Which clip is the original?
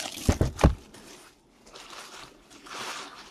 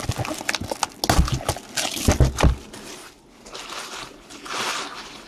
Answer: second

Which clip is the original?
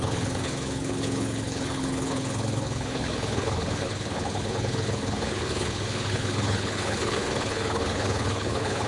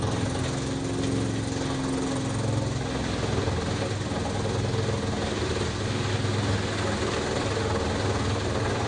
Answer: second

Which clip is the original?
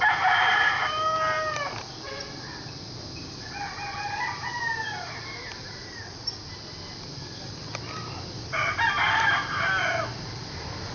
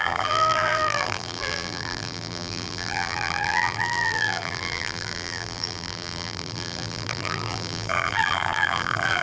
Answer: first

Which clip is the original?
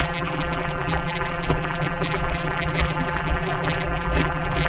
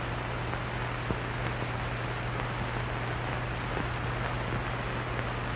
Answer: second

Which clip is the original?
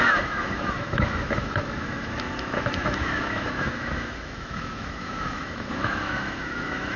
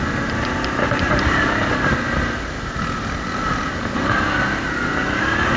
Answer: second